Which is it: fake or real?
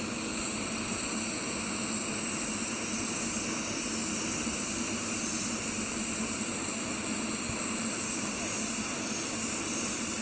real